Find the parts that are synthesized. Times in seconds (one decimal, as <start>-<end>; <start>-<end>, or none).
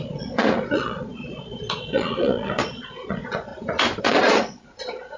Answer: 0.0-3.5; 4.0-5.2